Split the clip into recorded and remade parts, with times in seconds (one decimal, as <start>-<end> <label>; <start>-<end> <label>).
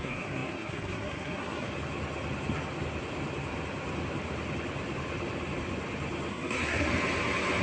0.0-1.7 remade; 1.7-6.3 recorded; 6.3-6.9 remade; 6.9-7.6 recorded